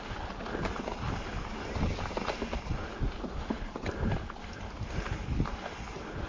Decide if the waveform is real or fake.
real